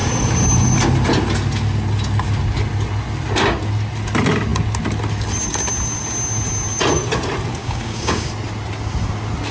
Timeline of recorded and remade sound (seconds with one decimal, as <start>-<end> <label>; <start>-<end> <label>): 0.0-7.6 recorded; 7.6-8.3 remade; 8.3-9.5 recorded